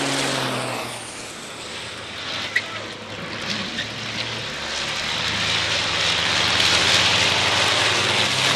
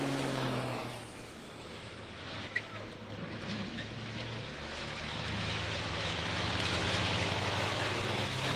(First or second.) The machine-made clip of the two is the second